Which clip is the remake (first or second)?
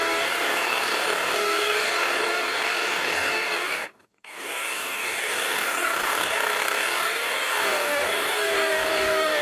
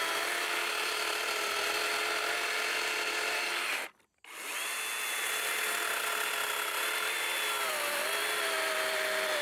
first